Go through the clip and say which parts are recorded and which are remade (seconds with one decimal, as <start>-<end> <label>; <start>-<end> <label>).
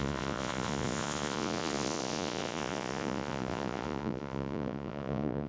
0.0-5.5 remade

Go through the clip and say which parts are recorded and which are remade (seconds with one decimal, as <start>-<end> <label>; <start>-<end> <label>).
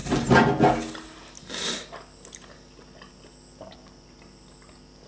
0.0-5.1 recorded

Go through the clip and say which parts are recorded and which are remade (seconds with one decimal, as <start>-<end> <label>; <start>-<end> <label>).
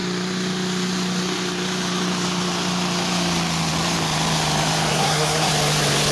0.0-4.9 recorded; 4.9-5.5 remade; 5.5-6.1 recorded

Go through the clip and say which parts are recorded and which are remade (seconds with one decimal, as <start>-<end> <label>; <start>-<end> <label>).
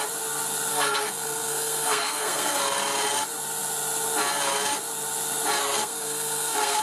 0.0-0.7 recorded; 0.7-2.6 remade; 2.6-5.6 recorded; 5.6-6.8 remade